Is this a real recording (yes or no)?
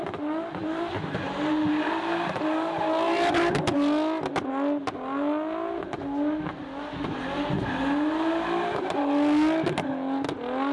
yes